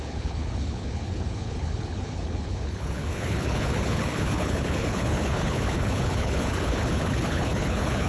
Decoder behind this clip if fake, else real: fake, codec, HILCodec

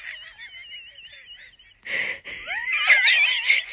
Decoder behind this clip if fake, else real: real